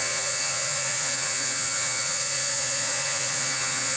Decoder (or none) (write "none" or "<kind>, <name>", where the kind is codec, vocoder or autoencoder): vocoder, Vocos